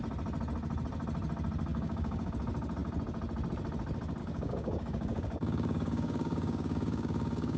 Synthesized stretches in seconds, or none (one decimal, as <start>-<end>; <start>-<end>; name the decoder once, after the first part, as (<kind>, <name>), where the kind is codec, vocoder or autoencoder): 1.7-2.3 (codec, DAC); 4.2-7.6